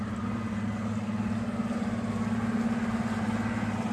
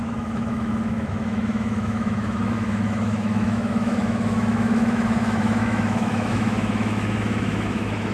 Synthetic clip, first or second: second